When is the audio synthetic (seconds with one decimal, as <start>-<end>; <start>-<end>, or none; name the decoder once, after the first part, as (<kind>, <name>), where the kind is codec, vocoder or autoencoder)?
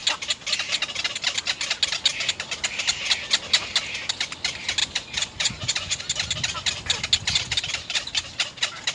4.8-6.0 (vocoder, Vocos)